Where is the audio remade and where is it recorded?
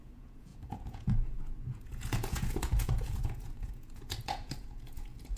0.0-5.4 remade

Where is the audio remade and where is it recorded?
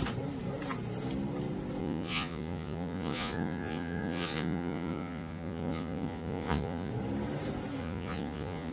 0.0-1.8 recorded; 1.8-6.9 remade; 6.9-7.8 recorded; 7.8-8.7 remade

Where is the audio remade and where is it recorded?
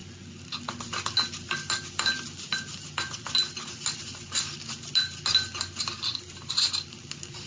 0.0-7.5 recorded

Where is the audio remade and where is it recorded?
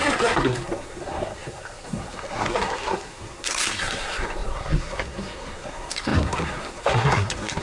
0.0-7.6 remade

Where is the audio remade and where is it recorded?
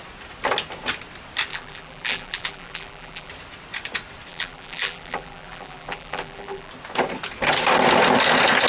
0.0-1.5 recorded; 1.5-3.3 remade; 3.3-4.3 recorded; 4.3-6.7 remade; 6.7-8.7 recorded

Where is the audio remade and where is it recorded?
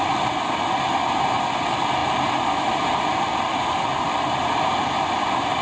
0.0-5.6 recorded